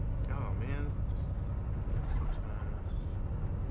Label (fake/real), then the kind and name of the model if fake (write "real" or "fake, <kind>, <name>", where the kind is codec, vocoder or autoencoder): real